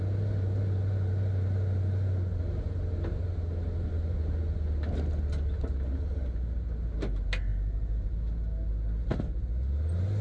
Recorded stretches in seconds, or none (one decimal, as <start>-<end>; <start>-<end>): 0.0-10.2